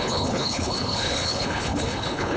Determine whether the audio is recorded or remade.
remade